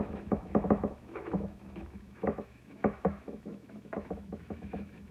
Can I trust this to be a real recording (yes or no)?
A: no